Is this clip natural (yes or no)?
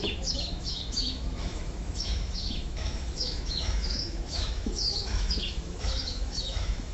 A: no